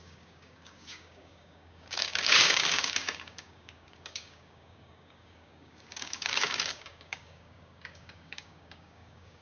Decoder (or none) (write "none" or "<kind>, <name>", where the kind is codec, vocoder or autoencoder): codec, DAC